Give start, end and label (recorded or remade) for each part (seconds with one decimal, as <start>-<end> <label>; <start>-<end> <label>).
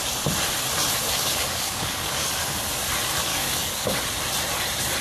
0.0-1.0 recorded; 1.0-2.3 remade; 2.3-3.3 recorded; 3.3-4.0 remade; 4.0-5.0 recorded